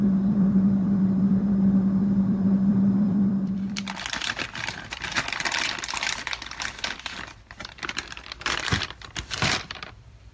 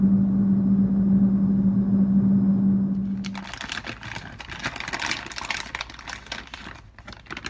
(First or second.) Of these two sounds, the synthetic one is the first